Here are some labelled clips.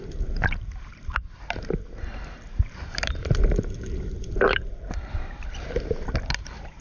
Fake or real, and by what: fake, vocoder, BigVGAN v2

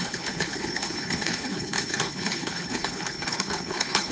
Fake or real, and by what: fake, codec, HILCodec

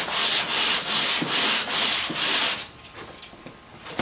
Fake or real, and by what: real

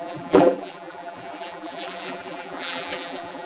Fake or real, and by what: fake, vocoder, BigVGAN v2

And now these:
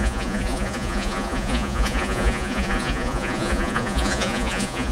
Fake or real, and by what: fake, vocoder, Vocos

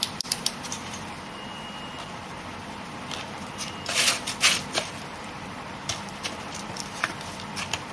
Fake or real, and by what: fake, vocoder, BigVGAN v2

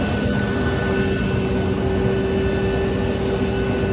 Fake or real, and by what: real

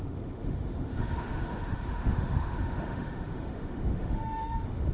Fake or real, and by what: fake, autoencoder, DAC-VAE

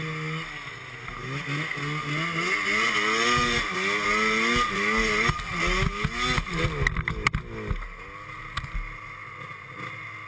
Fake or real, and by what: real